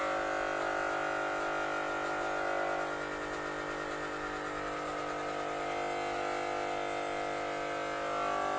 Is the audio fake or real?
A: real